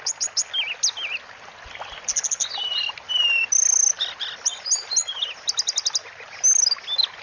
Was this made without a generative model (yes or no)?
yes